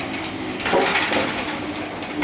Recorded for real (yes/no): yes